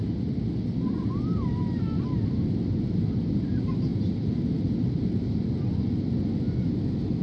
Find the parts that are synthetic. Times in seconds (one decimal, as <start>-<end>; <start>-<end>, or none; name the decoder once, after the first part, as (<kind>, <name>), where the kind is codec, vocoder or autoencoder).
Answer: 3.9-6.0 (vocoder, BigVGAN v2)